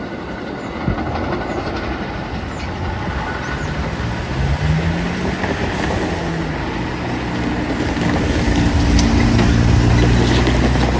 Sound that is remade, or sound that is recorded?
recorded